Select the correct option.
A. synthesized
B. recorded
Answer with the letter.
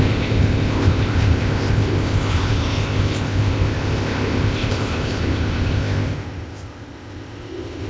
A